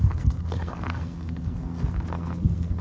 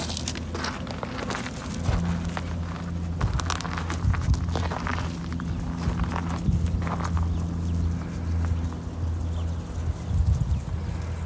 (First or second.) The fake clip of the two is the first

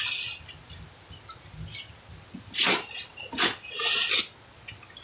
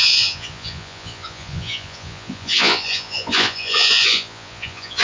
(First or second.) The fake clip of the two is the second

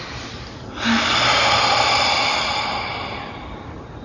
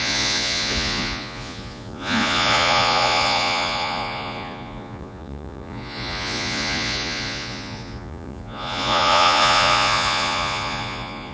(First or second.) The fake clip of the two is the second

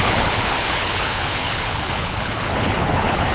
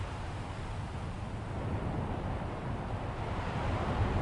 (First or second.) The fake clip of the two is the first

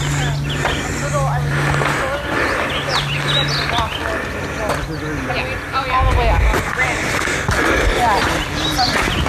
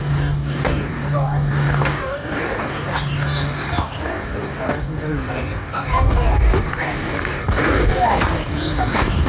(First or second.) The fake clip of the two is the second